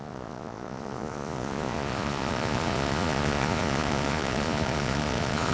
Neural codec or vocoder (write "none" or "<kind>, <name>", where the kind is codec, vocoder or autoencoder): vocoder, Vocos